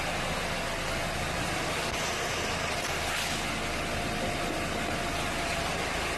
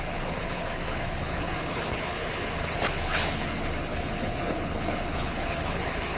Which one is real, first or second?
first